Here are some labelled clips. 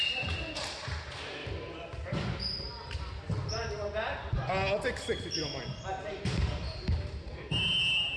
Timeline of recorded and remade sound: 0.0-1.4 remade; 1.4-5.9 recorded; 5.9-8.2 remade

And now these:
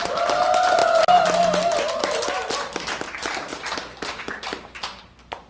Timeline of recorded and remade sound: 0.0-5.5 recorded

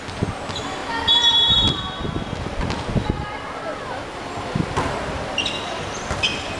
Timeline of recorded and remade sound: 0.0-0.8 recorded; 0.8-1.8 remade; 1.8-3.2 recorded; 3.2-5.8 remade; 5.8-6.6 recorded

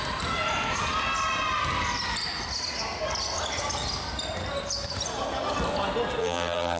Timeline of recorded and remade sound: 0.0-6.2 recorded; 6.2-6.8 remade

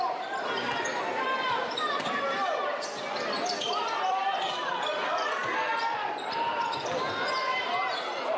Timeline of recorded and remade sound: 0.0-7.7 remade; 7.7-8.4 recorded

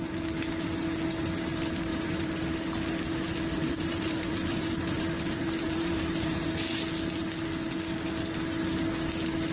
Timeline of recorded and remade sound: 0.0-1.9 recorded; 1.9-2.4 remade; 2.4-3.6 recorded; 3.6-6.5 remade; 6.5-9.5 recorded

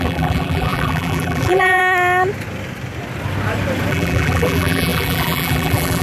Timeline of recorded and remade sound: 0.0-1.8 remade; 1.8-3.9 recorded; 3.9-6.0 remade

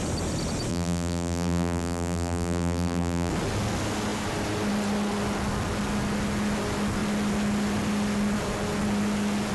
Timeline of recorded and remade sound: 0.0-0.7 recorded; 0.7-3.3 remade; 3.3-9.5 recorded